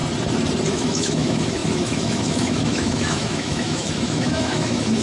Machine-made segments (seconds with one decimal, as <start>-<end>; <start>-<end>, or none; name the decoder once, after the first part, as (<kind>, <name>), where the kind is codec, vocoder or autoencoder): 0.7-5.0 (autoencoder, DAC-VAE)